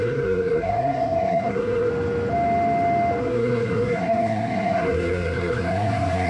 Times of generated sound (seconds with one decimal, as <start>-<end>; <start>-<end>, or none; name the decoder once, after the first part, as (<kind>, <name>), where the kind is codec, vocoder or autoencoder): 0.0-1.9 (codec, SNAC); 3.2-6.3